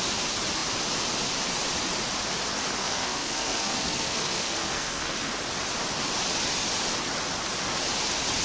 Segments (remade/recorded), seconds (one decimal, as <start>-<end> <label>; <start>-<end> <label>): 0.0-2.8 recorded; 2.8-5.3 remade; 5.3-8.4 recorded